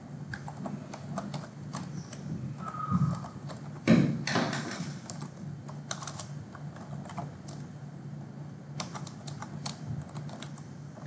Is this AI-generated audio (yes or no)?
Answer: no